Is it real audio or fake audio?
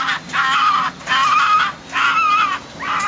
real